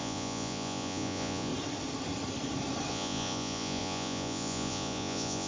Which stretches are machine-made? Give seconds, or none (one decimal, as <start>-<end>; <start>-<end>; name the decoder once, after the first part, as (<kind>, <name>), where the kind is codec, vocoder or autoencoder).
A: 0.0-1.5 (vocoder, Vocos); 2.9-5.5